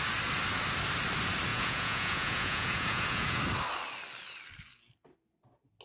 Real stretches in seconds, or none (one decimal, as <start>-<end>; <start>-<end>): 0.0-1.5; 3.4-5.8